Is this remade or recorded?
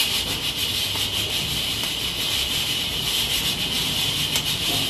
recorded